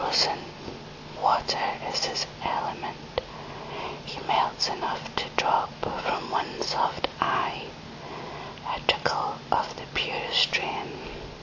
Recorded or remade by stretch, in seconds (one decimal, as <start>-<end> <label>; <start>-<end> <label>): 0.0-11.4 recorded